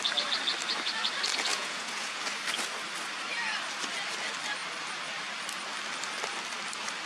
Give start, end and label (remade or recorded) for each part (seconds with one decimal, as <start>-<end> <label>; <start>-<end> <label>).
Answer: 0.0-1.5 recorded; 1.5-2.2 remade; 2.2-7.1 recorded